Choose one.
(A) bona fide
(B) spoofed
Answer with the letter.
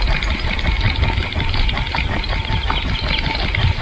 A